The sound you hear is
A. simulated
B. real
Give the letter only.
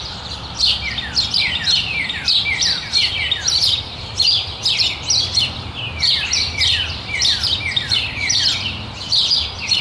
A